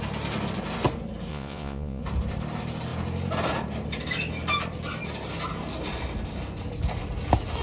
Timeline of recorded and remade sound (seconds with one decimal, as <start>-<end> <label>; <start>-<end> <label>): 0.0-1.3 recorded; 1.3-2.0 remade; 2.0-7.6 recorded